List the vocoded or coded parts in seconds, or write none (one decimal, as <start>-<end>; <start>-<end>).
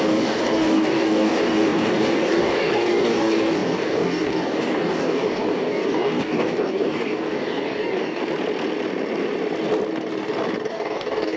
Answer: 0.0-8.2; 10.7-11.4